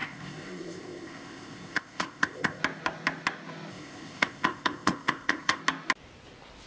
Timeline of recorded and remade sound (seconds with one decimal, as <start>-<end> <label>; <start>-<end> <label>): 0.0-2.6 remade; 2.6-3.7 recorded; 3.7-5.6 remade; 5.6-6.7 recorded